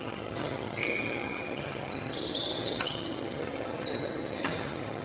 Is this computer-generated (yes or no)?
yes